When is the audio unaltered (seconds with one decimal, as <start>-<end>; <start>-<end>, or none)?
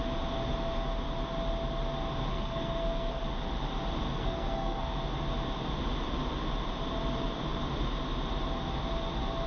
0.0-2.3; 3.2-4.1; 4.9-9.5